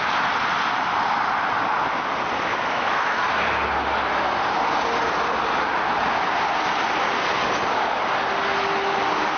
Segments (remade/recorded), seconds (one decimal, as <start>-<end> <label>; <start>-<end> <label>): 0.0-2.5 recorded; 2.5-3.2 remade; 3.2-9.4 recorded